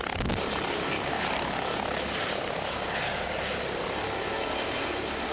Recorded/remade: recorded